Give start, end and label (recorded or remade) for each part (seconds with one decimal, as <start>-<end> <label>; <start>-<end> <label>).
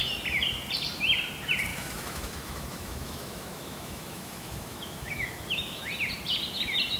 0.0-1.7 recorded; 1.7-5.9 remade; 5.9-7.0 recorded